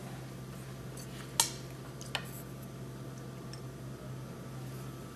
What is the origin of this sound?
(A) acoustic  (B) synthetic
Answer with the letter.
A